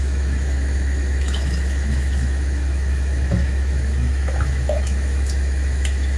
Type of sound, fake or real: fake